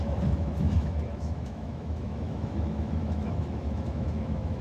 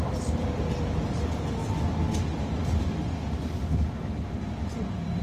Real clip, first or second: second